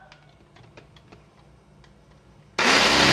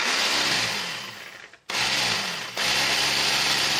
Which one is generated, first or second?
second